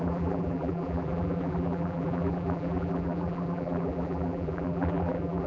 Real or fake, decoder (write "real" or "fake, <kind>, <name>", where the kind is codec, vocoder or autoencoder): fake, vocoder, BigVGAN v2